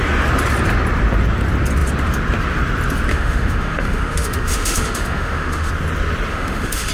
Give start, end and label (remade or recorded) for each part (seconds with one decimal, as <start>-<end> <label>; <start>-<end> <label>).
0.0-3.1 recorded; 3.1-5.7 remade; 5.7-6.3 recorded; 6.3-6.9 remade